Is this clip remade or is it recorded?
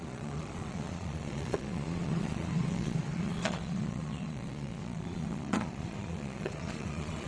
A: remade